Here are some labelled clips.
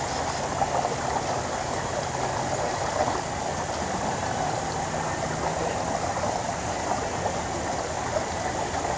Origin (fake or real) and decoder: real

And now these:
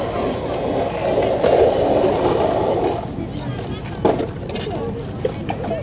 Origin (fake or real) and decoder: real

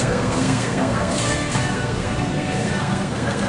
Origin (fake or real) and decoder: fake, codec, SNAC